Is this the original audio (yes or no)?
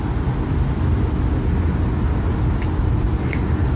yes